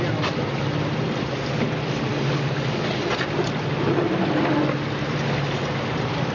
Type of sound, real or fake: real